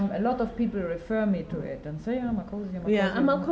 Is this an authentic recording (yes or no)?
yes